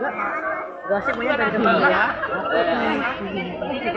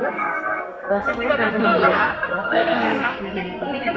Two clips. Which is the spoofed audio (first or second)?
second